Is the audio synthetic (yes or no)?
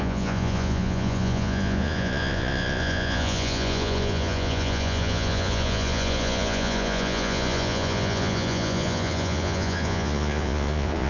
yes